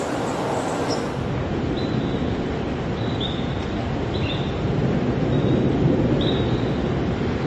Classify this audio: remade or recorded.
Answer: remade